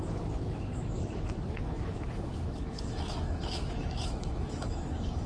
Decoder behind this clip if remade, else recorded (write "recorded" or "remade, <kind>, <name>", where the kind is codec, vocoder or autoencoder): remade, autoencoder, DAC-VAE